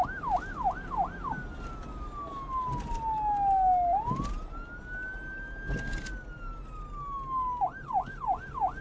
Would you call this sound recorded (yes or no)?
yes